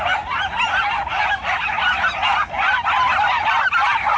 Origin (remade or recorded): recorded